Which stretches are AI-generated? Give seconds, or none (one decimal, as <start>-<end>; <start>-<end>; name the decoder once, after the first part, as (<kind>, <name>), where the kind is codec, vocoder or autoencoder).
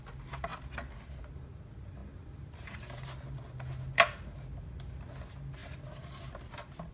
none